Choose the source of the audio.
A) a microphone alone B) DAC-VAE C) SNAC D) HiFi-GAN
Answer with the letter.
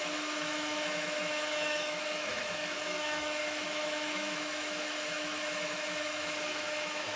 B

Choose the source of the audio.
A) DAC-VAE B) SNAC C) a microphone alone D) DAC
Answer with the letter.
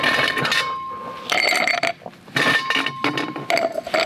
C